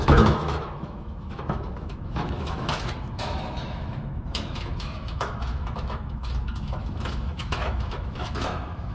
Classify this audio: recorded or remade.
remade